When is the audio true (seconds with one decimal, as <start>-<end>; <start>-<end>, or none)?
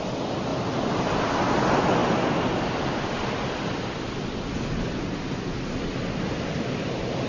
0.0-7.3